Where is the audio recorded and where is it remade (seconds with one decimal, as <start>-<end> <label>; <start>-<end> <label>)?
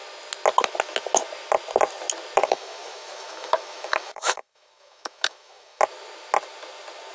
0.0-2.4 recorded; 2.4-5.8 remade; 5.8-7.1 recorded